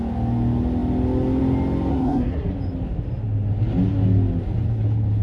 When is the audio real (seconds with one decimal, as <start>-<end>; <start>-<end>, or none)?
0.0-1.9; 2.5-5.2